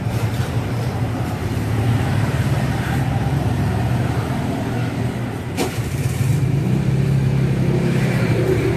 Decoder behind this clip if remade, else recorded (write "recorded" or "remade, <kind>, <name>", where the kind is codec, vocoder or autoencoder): remade, vocoder, BigVGAN v2